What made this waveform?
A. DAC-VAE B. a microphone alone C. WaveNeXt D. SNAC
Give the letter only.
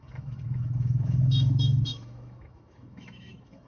A